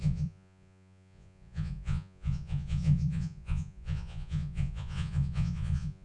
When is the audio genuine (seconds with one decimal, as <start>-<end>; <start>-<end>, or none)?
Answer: none